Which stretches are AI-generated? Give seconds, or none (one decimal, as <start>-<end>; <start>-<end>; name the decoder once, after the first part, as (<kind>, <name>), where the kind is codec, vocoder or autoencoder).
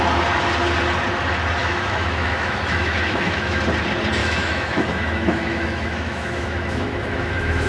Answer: 1.6-3.6 (autoencoder, DAC-VAE); 4.2-7.7